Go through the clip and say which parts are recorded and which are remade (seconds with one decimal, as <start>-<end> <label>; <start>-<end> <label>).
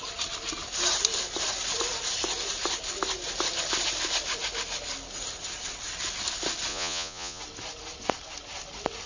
0.0-6.7 recorded; 6.7-7.4 remade; 7.4-9.1 recorded